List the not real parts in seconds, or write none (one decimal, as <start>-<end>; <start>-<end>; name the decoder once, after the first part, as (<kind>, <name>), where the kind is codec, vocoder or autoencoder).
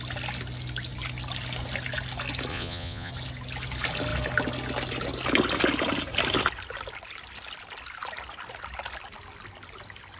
2.5-3.1 (vocoder, Vocos)